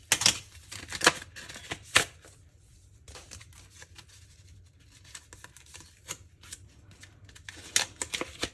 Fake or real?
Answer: real